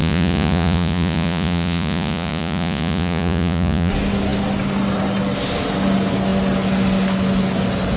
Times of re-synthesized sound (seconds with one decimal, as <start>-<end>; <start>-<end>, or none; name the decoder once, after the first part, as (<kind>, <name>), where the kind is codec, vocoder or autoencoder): 0.0-3.9 (vocoder, Vocos)